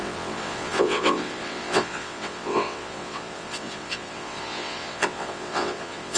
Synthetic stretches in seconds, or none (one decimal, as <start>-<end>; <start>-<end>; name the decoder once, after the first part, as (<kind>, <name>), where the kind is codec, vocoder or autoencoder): 0.0-6.2 (vocoder, WaveNeXt)